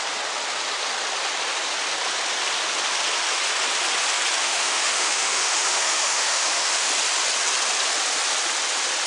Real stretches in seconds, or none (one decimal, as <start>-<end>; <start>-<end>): 0.0-4.4; 6.9-9.1